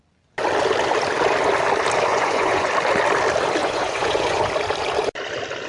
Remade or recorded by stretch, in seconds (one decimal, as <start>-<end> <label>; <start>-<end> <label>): 0.0-2.1 recorded; 2.1-2.7 remade; 2.7-3.6 recorded; 3.6-4.5 remade; 4.5-5.7 recorded